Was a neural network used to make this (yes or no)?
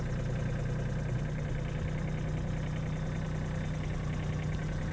no